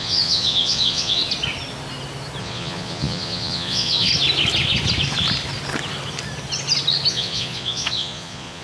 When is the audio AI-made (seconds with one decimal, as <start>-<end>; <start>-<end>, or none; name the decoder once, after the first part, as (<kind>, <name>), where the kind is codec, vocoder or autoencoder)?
0.0-1.2 (vocoder, Vocos); 2.4-4.1; 7.1-8.6